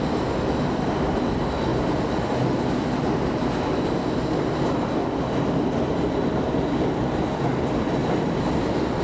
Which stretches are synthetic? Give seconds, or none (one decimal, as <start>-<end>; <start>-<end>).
none